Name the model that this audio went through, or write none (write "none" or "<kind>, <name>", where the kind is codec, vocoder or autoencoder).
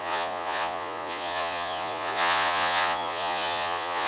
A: vocoder, Vocos